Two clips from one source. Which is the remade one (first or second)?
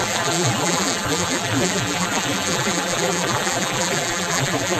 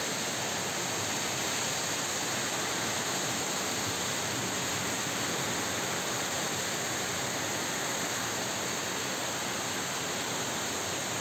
first